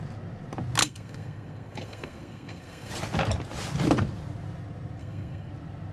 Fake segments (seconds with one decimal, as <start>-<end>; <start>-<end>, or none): 0.8-2.9; 5.0-5.5